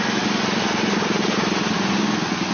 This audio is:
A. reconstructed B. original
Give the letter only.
B